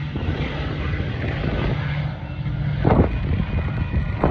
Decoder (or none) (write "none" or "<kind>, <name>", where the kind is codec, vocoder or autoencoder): none